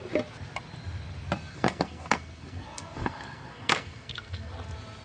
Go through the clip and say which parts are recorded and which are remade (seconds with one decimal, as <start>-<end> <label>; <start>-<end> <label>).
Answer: 0.0-1.5 recorded; 1.5-4.5 remade; 4.5-5.0 recorded